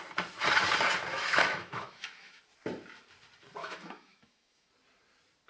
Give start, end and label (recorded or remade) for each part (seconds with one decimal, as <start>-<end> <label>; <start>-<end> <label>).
0.0-1.1 recorded; 1.1-2.4 remade; 2.4-3.6 recorded; 3.6-4.7 remade; 4.7-5.5 recorded